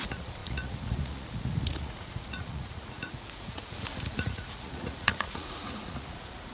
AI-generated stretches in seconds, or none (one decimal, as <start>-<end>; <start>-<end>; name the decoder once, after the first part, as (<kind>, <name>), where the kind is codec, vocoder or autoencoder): 0.0-6.5 (vocoder, Vocos)